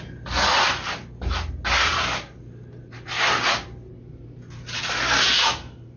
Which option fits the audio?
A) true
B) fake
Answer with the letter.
A